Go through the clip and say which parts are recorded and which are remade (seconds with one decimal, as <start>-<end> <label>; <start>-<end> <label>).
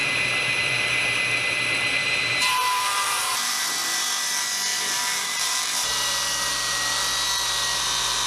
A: 0.0-2.0 recorded; 2.0-3.7 remade; 3.7-4.7 recorded; 4.7-6.1 remade; 6.1-8.3 recorded